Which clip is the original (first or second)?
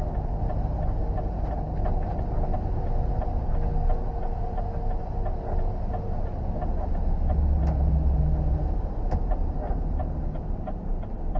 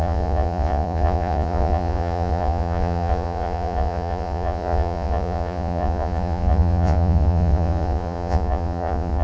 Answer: first